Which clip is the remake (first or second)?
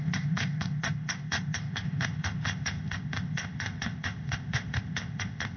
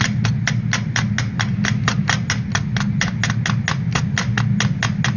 first